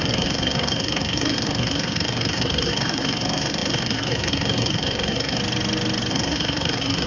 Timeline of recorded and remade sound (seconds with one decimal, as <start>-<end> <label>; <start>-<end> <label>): 0.0-5.4 remade; 5.4-6.1 recorded; 6.1-7.1 remade